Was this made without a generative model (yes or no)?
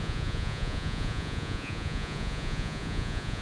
no